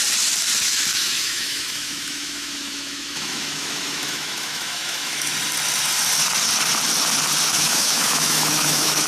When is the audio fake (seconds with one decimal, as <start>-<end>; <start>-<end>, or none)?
0.9-5.3; 7.5-9.1